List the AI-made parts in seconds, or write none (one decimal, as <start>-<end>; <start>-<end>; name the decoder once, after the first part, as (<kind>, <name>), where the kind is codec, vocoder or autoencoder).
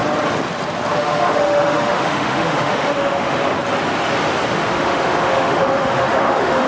1.0-3.4 (autoencoder, DAC-VAE); 4.5-6.7